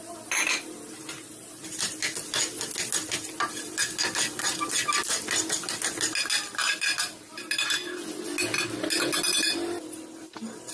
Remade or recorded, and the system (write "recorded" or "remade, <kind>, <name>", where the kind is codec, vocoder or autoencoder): recorded